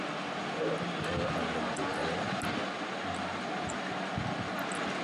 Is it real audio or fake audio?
real